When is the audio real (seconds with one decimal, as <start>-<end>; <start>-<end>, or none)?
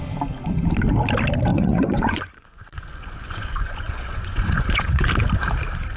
0.0-1.5; 5.1-6.0